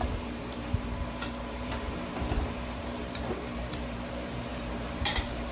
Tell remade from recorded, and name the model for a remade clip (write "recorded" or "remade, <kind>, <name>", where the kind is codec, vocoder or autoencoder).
remade, vocoder, BigVGAN v2